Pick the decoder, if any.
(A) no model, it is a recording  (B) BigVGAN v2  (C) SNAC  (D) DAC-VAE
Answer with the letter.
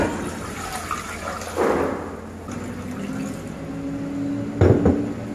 A